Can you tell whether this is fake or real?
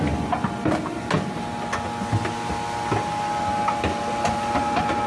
real